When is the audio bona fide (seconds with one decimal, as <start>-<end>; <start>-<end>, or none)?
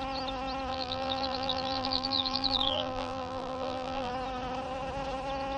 0.0-0.7; 4.1-5.6